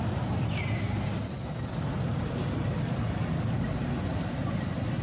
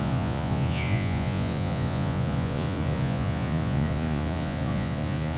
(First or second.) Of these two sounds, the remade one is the second